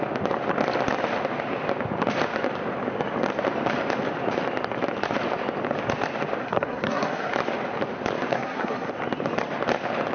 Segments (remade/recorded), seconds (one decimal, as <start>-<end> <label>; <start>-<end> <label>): 0.0-6.4 recorded; 6.4-7.3 remade; 7.3-8.3 recorded; 8.3-8.9 remade; 8.9-10.1 recorded

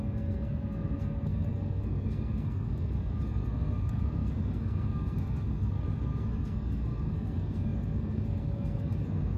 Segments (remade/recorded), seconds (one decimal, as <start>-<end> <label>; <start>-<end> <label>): 0.0-9.4 remade

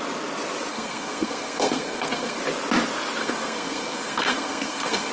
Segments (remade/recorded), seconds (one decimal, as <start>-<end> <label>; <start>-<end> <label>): 0.0-0.7 recorded; 0.7-2.4 remade; 2.4-3.2 recorded; 3.2-5.1 remade

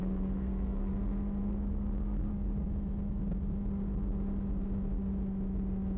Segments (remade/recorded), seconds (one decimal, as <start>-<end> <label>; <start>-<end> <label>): 0.0-0.9 remade; 0.9-1.4 recorded; 1.4-2.3 remade; 2.3-6.0 recorded